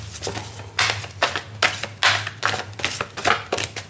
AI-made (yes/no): no